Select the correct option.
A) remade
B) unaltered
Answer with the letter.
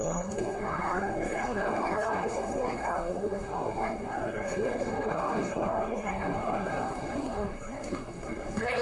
A